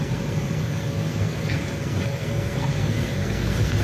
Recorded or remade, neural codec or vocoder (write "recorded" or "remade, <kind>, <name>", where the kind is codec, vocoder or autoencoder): remade, codec, SNAC